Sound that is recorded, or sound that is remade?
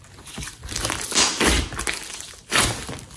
recorded